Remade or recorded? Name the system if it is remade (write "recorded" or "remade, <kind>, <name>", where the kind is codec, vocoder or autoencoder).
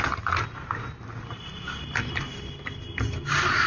recorded